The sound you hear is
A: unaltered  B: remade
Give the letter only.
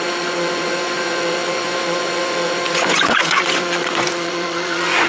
B